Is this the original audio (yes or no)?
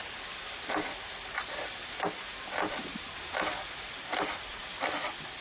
yes